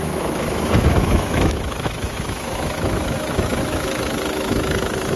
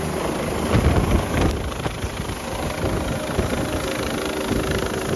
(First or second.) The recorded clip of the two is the second